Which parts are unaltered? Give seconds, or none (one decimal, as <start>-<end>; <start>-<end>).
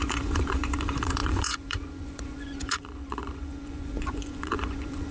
none